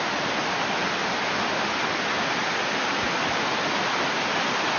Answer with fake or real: real